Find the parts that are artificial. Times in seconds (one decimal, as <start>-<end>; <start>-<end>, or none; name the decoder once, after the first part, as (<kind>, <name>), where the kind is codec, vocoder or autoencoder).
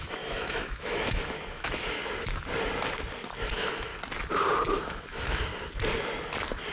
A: 0.0-2.0 (autoencoder, DAC-VAE); 3.5-3.9; 4.7-5.5